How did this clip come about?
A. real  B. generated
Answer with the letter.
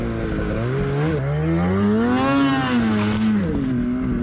A